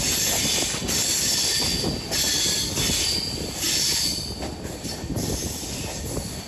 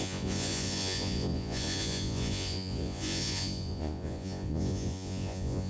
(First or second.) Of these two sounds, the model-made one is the second